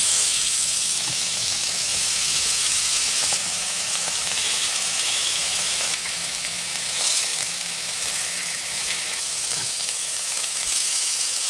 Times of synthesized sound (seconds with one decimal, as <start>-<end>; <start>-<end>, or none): 0.0-11.5

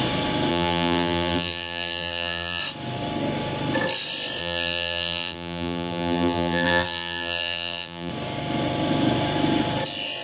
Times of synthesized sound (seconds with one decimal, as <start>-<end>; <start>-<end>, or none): 0.5-2.6; 4.4-8.1

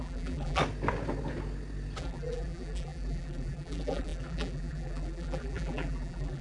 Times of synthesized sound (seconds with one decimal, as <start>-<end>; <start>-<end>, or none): 0.0-0.6; 2.0-6.4

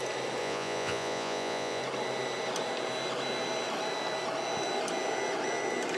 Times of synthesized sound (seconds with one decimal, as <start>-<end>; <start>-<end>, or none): 0.4-1.8

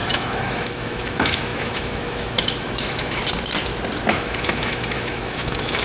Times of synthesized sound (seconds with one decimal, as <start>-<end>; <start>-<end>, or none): 0.0-3.2; 4.1-5.8